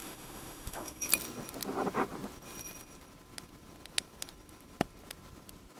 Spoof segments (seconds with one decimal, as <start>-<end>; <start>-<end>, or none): 0.0-1.1